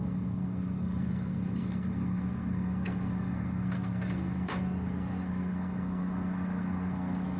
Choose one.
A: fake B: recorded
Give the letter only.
A